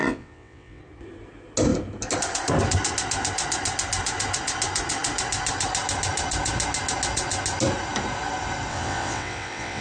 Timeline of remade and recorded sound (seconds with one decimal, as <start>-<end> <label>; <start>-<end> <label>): 0.0-0.8 remade; 0.8-8.7 recorded; 8.7-9.8 remade